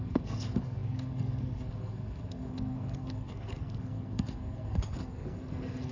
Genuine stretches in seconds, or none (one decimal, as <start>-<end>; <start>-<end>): none